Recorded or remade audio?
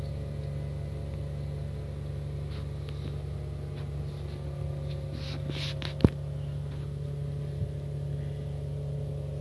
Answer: recorded